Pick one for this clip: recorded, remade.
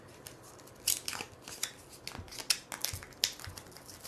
recorded